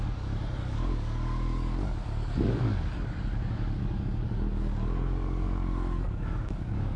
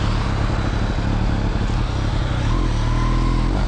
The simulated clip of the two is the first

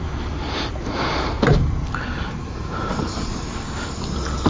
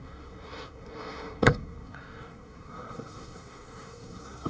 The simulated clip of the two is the second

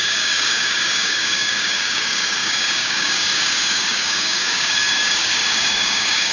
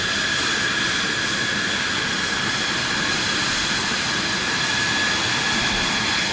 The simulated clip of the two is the first